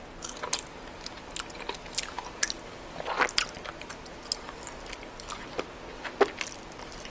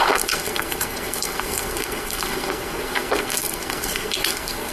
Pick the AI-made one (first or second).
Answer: second